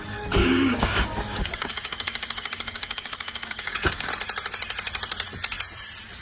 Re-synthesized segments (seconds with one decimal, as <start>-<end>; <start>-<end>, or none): 0.4-4.1